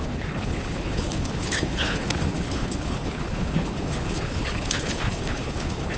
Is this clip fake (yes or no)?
yes